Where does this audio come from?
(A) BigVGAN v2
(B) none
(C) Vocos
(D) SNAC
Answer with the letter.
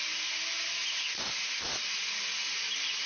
B